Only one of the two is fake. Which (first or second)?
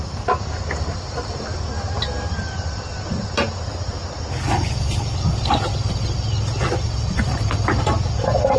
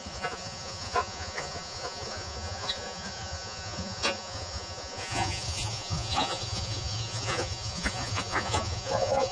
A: second